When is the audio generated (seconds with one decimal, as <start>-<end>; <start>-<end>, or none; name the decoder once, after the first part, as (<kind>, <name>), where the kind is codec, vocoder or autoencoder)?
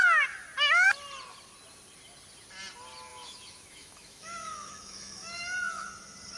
3.1-5.9 (autoencoder, DAC-VAE)